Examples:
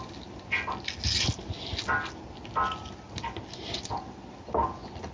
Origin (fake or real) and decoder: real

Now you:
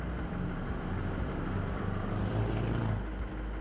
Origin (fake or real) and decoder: real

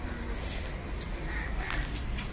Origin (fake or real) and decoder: real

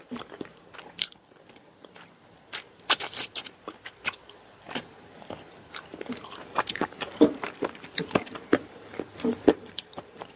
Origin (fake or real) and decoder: fake, vocoder, BigVGAN v2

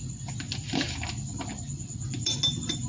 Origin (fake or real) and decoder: fake, vocoder, BigVGAN v2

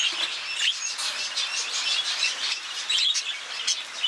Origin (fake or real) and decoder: real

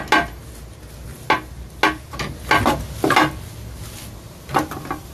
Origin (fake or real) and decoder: real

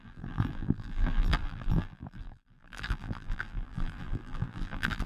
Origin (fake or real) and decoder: fake, vocoder, BigVGAN v2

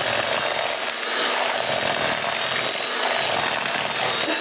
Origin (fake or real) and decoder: real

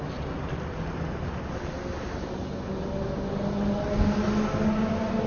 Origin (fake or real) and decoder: real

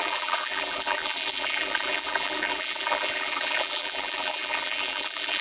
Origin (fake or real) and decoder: fake, vocoder, BigVGAN v2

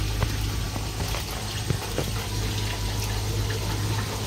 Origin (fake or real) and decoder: real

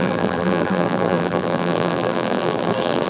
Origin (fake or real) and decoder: fake, vocoder, BigVGAN v2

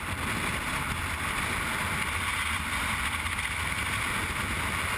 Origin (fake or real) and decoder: real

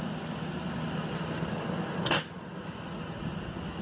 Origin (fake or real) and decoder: real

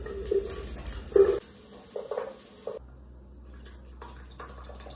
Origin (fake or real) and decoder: real